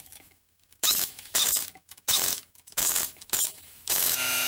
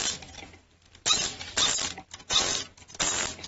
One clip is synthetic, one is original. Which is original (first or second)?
second